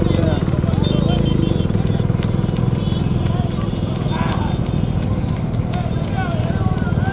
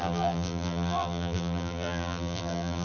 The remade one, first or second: second